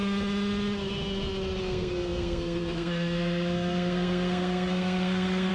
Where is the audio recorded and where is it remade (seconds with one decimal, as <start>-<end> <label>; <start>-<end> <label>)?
0.0-1.6 recorded; 1.6-5.5 remade